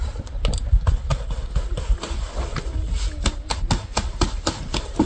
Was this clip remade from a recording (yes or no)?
no